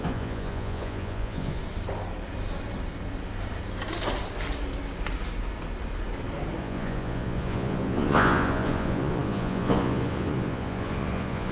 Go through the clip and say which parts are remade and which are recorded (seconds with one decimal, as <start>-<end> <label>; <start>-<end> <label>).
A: 0.0-1.6 remade; 1.6-6.6 recorded; 6.6-11.5 remade